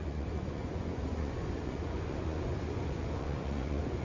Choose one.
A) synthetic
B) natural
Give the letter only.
A